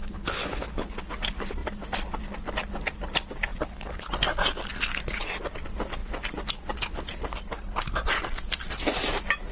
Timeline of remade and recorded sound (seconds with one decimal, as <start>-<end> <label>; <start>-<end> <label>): 0.0-1.1 remade; 1.1-3.5 recorded; 3.5-4.1 remade; 4.1-9.5 recorded

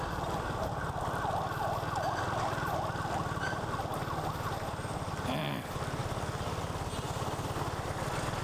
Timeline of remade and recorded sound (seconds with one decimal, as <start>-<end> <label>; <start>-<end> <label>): 0.0-8.4 recorded